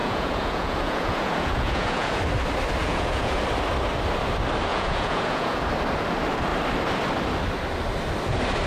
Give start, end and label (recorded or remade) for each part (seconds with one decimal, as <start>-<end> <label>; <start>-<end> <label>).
0.0-2.2 remade; 2.2-2.8 recorded; 2.8-3.4 remade; 3.4-4.7 recorded; 4.7-5.6 remade; 5.6-8.7 recorded